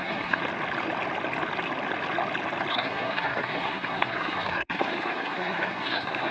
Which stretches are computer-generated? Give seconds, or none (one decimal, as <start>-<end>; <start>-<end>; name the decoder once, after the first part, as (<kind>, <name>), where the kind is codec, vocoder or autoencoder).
0.0-0.4 (codec, SNAC); 2.7-6.3